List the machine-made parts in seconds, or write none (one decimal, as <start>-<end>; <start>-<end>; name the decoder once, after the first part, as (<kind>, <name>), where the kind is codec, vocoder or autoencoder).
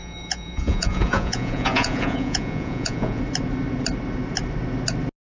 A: 0.0-3.2 (vocoder, Vocos)